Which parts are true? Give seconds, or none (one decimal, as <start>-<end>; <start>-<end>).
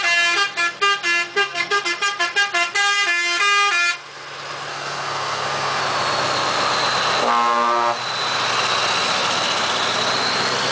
0.0-1.3; 1.8-4.7; 5.8-10.7